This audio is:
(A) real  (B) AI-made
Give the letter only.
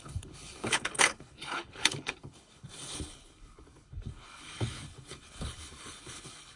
B